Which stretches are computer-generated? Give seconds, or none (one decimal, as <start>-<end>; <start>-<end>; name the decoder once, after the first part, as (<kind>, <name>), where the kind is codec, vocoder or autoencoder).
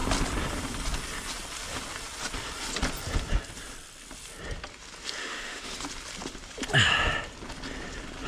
5.2-5.7 (autoencoder, DAC-VAE)